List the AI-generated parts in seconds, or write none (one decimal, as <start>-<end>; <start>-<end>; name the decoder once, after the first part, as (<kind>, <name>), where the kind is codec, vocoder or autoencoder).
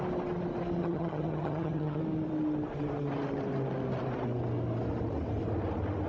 0.8-2.0 (vocoder, HiFi-GAN)